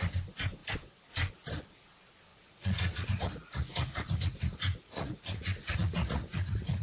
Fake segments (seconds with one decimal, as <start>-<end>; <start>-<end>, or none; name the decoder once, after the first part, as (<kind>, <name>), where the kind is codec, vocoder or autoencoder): 2.3-6.8 (vocoder, Vocos)